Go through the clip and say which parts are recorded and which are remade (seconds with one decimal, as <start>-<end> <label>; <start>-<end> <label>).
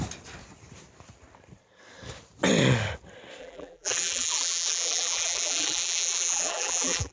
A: 0.0-3.4 recorded; 3.4-7.1 remade